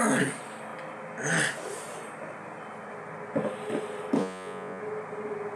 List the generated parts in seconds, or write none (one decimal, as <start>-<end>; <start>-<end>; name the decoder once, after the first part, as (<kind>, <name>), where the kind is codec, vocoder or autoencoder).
4.2-4.8 (vocoder, Vocos)

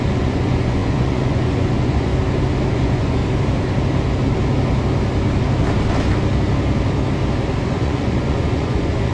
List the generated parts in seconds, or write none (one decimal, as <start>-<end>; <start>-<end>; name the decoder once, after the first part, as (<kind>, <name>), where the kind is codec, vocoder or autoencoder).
0.0-2.1 (vocoder, Vocos); 2.7-3.2; 7.6-9.1

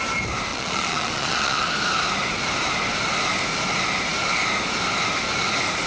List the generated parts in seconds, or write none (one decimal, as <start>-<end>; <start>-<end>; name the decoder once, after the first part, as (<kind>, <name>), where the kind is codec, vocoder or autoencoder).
0.5-1.7 (vocoder, Vocos)

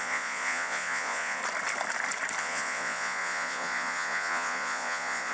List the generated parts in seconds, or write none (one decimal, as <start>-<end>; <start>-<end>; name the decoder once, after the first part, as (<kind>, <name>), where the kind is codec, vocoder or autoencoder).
0.0-1.4 (vocoder, Vocos); 2.4-5.3

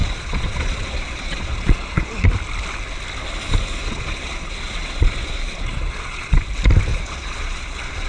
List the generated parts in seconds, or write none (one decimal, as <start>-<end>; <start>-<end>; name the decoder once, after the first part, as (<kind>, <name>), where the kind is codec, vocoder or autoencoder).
0.0-2.1 (vocoder, Vocos); 3.8-6.4; 6.9-8.1

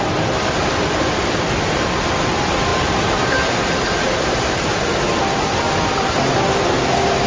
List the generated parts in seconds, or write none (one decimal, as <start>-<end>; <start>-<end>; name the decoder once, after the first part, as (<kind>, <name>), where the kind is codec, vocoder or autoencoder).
none